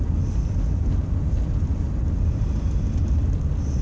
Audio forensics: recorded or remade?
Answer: recorded